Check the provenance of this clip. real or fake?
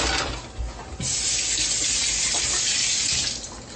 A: real